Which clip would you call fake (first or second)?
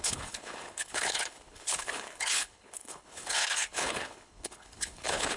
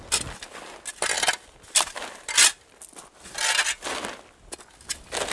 first